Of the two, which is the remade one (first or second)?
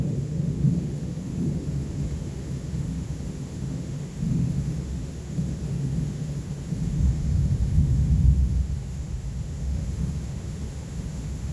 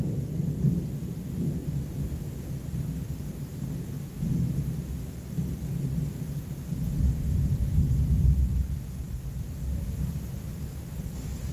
first